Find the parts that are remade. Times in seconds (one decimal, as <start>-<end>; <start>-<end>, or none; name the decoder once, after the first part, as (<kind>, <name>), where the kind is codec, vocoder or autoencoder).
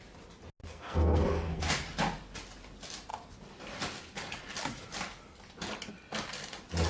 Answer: 0.6-1.6 (codec, SNAC)